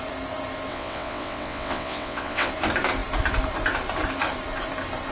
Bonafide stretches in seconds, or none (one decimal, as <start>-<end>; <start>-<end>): 0.0-0.7; 2.5-5.1